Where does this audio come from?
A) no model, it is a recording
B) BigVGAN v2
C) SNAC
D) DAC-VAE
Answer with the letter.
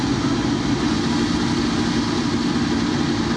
A